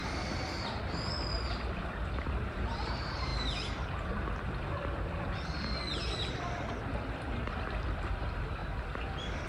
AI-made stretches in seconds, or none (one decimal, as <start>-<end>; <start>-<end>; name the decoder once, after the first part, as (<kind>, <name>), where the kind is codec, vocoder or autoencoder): 1.8-3.3 (vocoder, BigVGAN v2); 7.7-9.5